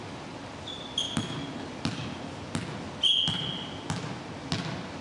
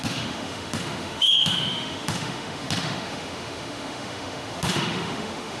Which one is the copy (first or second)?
second